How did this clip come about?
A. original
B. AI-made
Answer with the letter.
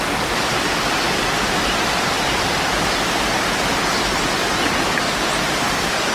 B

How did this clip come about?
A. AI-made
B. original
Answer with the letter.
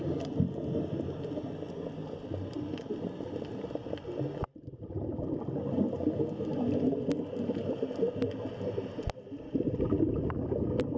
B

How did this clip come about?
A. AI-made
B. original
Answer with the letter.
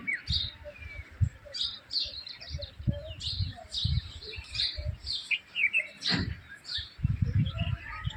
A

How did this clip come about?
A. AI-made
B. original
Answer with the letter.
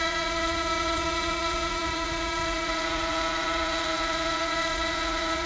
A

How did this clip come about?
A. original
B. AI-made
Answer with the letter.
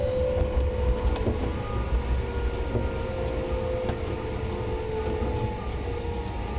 A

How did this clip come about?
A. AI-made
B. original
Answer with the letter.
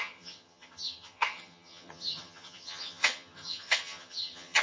A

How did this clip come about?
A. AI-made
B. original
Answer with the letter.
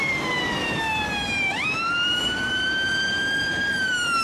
A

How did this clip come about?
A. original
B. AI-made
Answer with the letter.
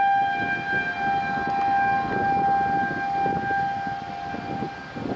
A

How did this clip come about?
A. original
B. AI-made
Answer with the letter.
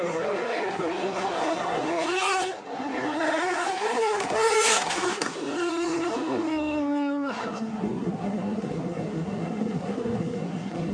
B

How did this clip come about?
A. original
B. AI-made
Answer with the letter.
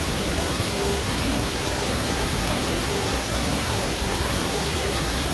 B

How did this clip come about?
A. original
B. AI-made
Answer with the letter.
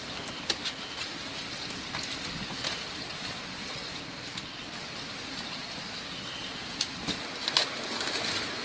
A